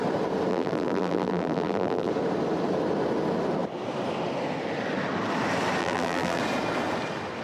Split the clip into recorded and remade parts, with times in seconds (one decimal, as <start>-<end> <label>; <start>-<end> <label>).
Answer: 0.0-0.5 recorded; 0.5-2.1 remade; 2.1-5.8 recorded; 5.8-6.4 remade; 6.4-7.4 recorded

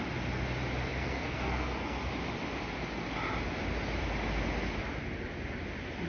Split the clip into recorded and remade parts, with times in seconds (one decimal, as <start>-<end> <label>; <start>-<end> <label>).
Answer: 0.0-0.9 recorded; 0.9-2.0 remade; 2.0-6.1 recorded